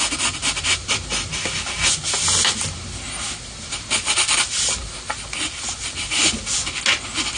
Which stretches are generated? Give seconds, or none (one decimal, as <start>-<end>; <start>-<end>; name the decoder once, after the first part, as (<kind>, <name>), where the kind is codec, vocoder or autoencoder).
none